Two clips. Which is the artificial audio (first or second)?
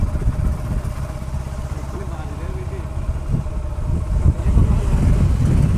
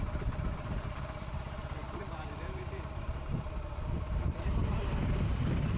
second